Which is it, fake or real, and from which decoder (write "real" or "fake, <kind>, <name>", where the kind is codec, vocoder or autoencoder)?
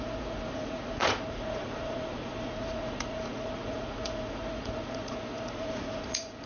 fake, vocoder, Vocos